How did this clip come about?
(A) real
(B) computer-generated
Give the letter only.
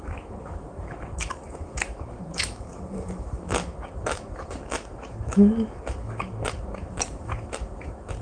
B